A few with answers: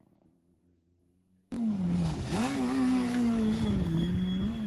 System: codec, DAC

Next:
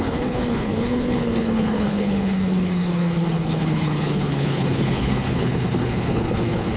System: codec, HILCodec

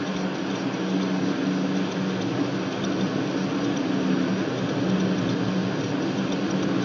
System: none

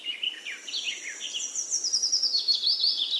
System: none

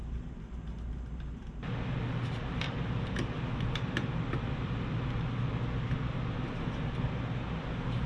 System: none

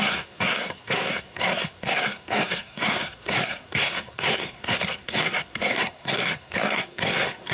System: codec, SNAC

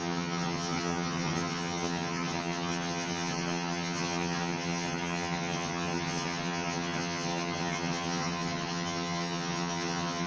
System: vocoder, HiFi-GAN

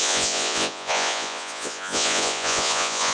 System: vocoder, Vocos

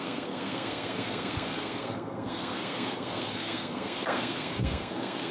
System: codec, SNAC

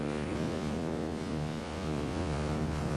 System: vocoder, Vocos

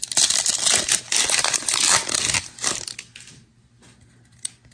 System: none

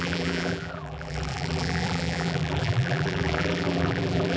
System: vocoder, BigVGAN v2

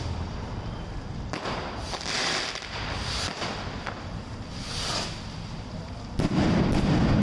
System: vocoder, BigVGAN v2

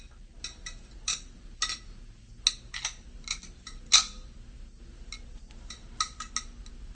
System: none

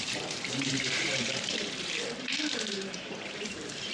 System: vocoder, BigVGAN v2